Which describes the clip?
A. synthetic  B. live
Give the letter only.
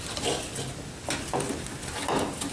B